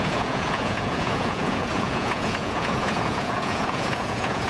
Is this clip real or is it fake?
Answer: fake